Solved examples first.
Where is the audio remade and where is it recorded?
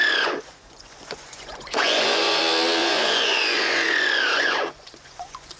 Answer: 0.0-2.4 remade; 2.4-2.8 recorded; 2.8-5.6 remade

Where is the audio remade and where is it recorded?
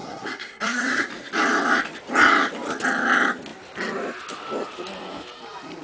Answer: 0.0-1.1 remade; 1.1-5.8 recorded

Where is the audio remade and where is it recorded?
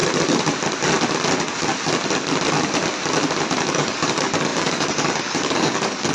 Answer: 0.0-3.7 recorded; 3.7-6.1 remade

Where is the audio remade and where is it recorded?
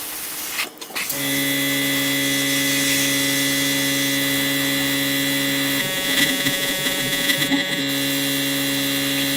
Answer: 0.0-5.8 recorded; 5.8-7.8 remade; 7.8-9.4 recorded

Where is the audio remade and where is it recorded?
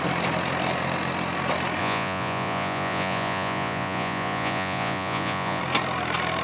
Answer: 0.0-1.8 recorded; 1.8-5.6 remade; 5.6-6.4 recorded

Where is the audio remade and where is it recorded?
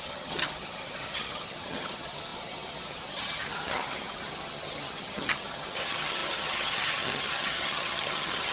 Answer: 0.0-8.5 remade